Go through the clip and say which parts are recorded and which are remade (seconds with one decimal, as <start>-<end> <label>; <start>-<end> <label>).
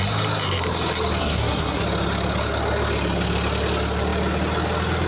0.0-1.2 recorded; 1.2-1.8 remade; 1.8-5.1 recorded